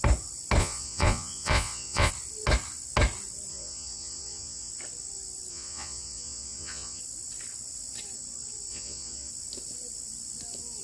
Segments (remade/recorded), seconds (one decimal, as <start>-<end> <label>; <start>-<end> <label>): 0.0-0.6 recorded; 0.6-2.1 remade; 2.1-3.5 recorded; 3.5-4.7 remade; 4.7-5.5 recorded; 5.5-7.0 remade; 7.0-8.7 recorded; 8.7-9.3 remade; 9.3-10.8 recorded